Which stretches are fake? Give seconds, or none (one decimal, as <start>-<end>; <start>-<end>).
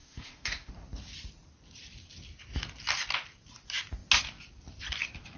0.0-0.7